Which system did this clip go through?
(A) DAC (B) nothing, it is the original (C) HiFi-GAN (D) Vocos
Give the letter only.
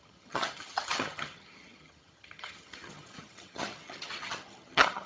C